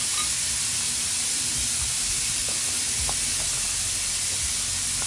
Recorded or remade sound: recorded